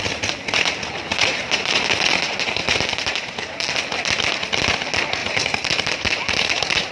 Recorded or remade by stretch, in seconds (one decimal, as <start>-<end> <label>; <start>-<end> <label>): 0.0-1.1 recorded; 1.1-3.7 remade; 3.7-5.2 recorded; 5.2-6.9 remade